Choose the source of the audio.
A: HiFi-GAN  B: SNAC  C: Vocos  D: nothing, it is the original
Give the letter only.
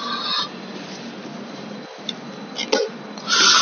D